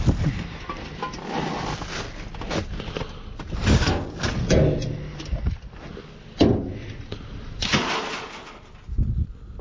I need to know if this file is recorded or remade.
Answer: recorded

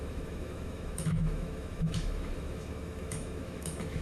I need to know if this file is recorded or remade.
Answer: remade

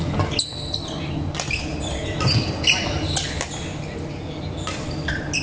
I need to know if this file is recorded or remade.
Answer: recorded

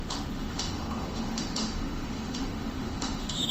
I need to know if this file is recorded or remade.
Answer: remade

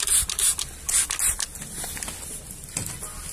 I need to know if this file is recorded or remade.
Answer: recorded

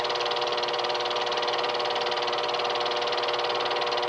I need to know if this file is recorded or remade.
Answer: recorded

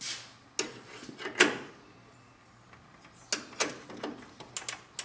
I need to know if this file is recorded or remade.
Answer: recorded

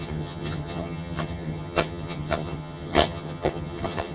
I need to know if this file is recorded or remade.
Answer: remade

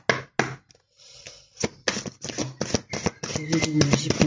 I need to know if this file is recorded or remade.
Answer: recorded